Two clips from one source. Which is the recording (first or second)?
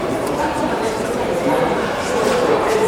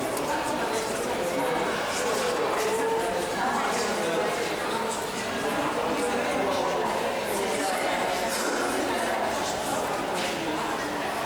second